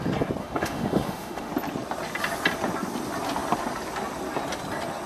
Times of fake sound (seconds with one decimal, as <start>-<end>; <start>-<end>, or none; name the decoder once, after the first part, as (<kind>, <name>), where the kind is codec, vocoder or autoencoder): 0.4-1.5 (autoencoder, DAC-VAE)